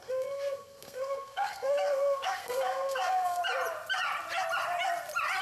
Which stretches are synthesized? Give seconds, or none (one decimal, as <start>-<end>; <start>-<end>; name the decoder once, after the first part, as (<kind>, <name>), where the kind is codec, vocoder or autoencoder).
0.0-3.4 (codec, SNAC)